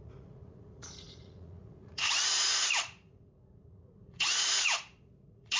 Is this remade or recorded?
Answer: remade